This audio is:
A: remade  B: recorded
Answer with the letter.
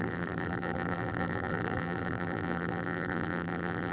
A